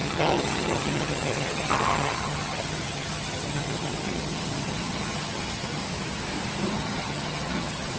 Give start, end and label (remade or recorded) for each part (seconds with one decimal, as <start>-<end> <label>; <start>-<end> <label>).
0.0-5.8 remade; 5.8-6.7 recorded; 6.7-8.0 remade